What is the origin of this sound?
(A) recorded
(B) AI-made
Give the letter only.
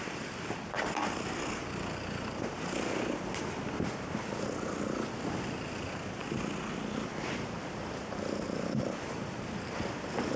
A